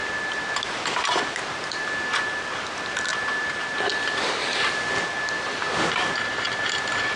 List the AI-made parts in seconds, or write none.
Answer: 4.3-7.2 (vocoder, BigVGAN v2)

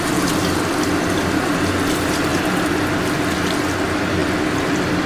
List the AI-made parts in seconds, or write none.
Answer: none

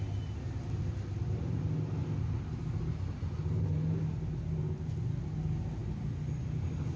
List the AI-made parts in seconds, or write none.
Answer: none

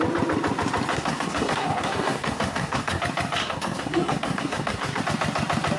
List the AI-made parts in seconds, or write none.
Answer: 0.9-3.0 (codec, SNAC); 3.4-5.0

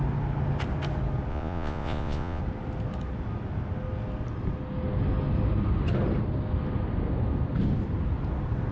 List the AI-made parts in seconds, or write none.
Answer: 1.3-2.4 (vocoder, Vocos)

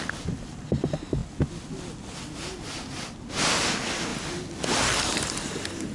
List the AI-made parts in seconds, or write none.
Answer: none

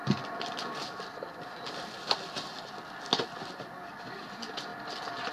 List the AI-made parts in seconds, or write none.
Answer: none

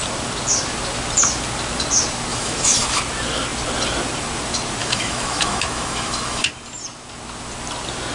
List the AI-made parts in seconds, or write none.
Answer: 2.3-3.0 (autoencoder, DAC-VAE); 4.8-6.5